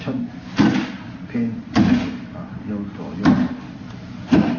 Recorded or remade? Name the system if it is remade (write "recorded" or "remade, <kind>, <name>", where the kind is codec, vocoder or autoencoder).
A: remade, vocoder, BigVGAN v2